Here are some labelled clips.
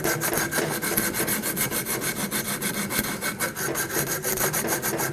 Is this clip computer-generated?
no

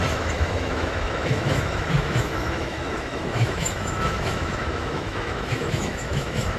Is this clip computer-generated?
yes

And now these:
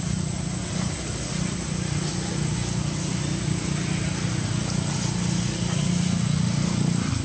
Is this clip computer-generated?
no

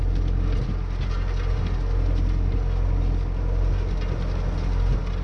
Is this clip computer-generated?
no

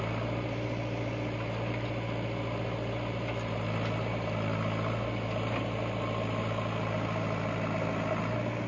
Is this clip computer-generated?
no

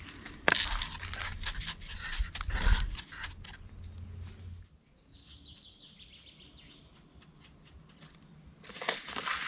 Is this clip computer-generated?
no